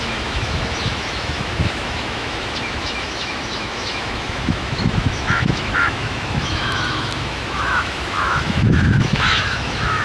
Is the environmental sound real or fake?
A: fake